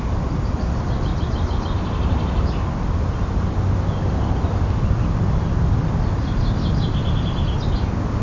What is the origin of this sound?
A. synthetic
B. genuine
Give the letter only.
B